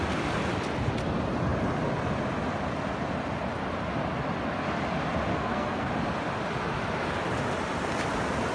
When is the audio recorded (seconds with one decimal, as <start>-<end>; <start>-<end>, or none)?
0.0-5.3; 5.9-8.5